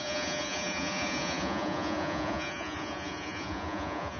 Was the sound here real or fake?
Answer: fake